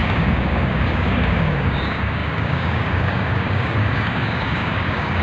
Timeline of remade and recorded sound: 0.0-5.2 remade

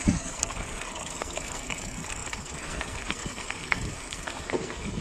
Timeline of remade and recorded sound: 0.0-5.0 remade